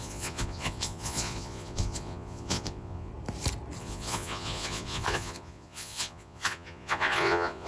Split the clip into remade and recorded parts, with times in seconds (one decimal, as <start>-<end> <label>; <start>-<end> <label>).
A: 0.0-3.1 remade; 3.1-3.8 recorded; 3.8-7.7 remade